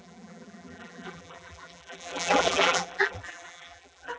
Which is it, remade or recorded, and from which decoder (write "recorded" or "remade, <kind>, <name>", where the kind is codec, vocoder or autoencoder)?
remade, vocoder, BigVGAN v2